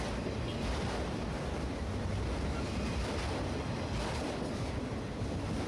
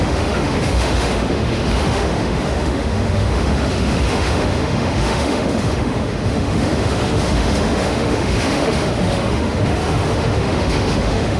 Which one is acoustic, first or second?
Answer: first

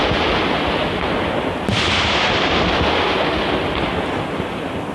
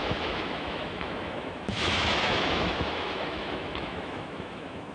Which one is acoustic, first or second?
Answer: first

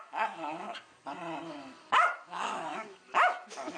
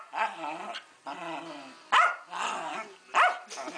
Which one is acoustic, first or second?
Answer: second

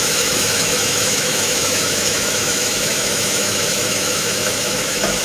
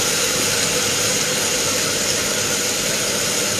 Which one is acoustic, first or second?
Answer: second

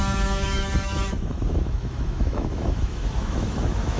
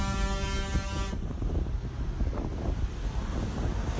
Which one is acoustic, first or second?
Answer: second